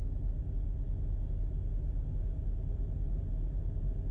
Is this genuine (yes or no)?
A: yes